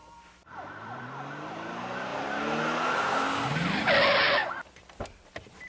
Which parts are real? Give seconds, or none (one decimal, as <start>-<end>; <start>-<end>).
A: 1.0-2.1; 2.6-5.7